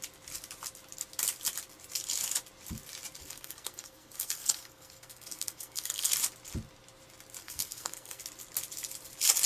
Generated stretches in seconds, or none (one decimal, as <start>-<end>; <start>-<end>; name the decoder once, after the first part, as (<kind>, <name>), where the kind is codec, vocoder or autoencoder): 3.2-6.1 (codec, SNAC); 7.4-8.2